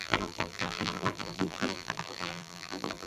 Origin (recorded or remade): remade